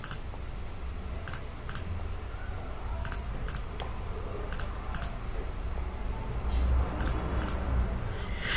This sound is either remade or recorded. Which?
recorded